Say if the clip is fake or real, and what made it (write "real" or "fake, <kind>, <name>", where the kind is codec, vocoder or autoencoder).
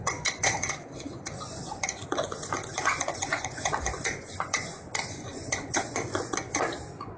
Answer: fake, vocoder, Vocos